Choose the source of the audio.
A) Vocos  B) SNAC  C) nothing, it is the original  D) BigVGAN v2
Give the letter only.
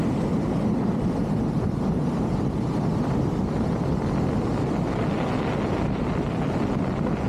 C